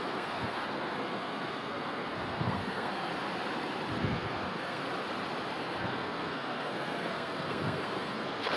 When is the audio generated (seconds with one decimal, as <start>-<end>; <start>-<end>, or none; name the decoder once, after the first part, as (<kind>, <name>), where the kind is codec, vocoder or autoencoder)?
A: 0.0-3.1 (codec, SNAC); 4.0-4.8; 5.6-8.6